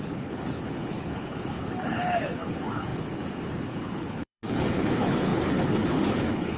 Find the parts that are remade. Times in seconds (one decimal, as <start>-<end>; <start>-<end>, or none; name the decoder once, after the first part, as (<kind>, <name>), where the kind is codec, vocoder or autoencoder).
0.0-6.6 (codec, HILCodec)

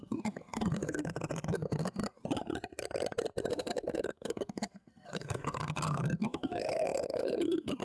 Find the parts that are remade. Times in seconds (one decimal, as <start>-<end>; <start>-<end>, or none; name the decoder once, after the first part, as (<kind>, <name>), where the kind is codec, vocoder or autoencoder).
0.0-2.0 (codec, SNAC); 3.5-7.8

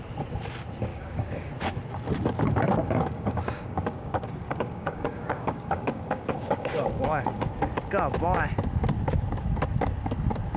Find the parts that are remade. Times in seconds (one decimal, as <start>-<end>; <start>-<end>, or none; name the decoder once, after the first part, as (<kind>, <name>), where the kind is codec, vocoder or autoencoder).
0.9-1.5 (codec, DAC); 2.8-7.6

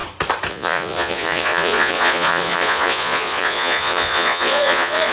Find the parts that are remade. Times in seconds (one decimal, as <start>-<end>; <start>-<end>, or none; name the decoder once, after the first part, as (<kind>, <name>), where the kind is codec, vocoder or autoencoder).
0.5-5.1 (vocoder, Vocos)

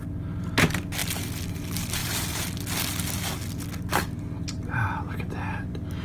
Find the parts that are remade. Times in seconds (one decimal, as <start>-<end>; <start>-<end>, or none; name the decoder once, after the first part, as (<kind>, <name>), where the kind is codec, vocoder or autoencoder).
none

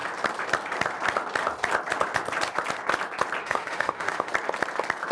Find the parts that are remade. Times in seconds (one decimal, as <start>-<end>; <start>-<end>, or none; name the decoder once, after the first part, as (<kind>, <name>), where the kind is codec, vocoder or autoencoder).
3.4-4.3 (autoencoder, DAC-VAE)

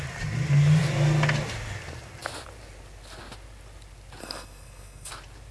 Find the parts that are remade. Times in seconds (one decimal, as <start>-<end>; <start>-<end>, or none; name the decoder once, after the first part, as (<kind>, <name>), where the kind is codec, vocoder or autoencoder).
4.2-5.1 (codec, SNAC)